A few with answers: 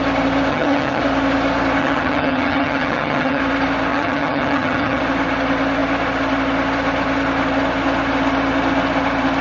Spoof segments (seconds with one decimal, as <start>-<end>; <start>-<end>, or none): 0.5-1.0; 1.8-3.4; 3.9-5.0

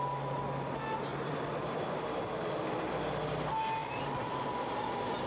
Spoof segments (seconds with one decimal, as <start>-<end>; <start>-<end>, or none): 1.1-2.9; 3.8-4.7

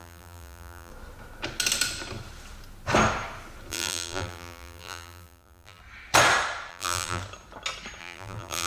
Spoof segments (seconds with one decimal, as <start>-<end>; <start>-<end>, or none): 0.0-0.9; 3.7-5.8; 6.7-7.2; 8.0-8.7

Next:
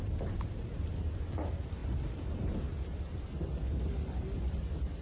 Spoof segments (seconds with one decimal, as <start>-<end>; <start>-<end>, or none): none

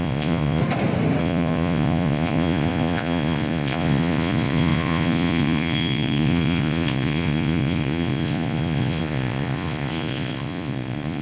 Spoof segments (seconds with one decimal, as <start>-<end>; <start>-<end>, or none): 0.0-0.6; 1.2-11.2

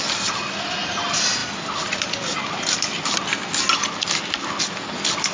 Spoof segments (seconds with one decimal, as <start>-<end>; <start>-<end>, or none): none

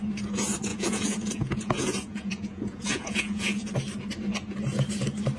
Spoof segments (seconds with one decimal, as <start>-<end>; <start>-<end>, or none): 0.7-3.7

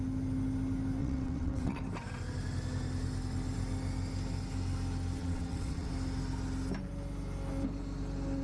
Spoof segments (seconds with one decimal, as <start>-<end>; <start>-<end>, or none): 1.0-1.8; 5.2-5.9